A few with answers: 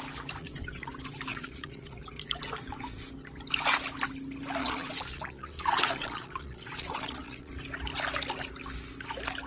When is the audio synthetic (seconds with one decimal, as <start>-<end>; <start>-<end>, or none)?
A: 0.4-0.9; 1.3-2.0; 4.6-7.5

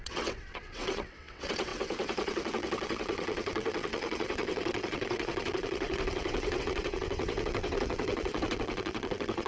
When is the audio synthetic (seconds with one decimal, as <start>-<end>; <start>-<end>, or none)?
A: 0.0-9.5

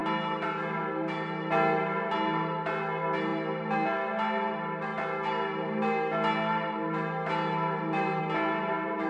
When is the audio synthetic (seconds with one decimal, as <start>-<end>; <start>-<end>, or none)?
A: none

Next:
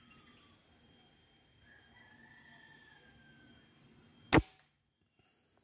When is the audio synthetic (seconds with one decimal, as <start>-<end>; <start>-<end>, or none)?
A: none

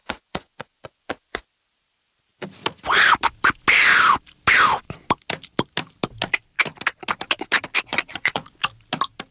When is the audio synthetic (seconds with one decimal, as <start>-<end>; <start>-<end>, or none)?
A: 0.0-1.4; 7.9-8.6

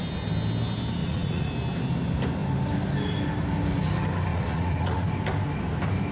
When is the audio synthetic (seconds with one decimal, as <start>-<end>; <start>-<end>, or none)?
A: 1.0-1.5; 4.3-5.1

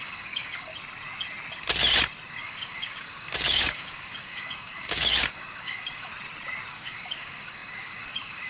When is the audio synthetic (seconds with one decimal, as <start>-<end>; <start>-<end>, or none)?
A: 0.0-0.7; 2.3-6.1; 6.7-8.5